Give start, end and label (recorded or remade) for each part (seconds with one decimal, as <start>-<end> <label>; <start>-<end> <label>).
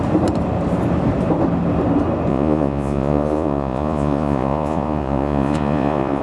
0.0-2.3 recorded; 2.3-6.2 remade